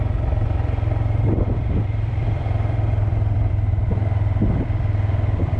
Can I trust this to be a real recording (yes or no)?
no